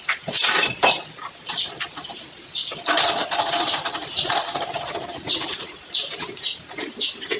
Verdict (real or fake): fake